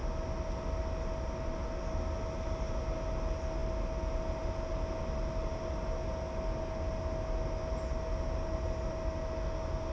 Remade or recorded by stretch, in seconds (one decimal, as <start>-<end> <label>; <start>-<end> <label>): 0.0-9.9 recorded